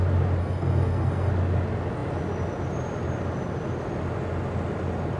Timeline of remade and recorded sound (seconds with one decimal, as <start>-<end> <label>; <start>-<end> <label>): 0.0-0.4 recorded; 0.4-1.3 remade; 1.3-5.2 recorded